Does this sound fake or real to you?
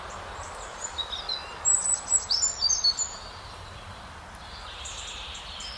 real